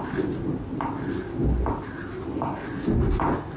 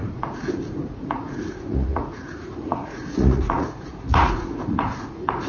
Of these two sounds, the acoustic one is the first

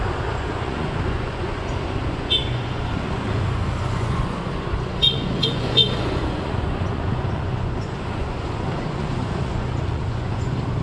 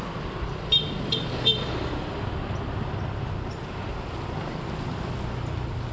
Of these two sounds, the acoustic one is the second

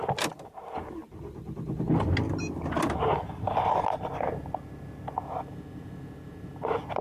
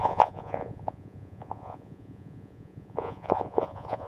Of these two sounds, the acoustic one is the first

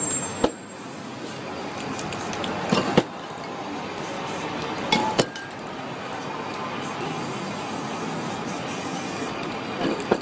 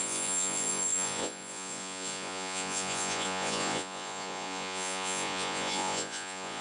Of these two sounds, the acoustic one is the first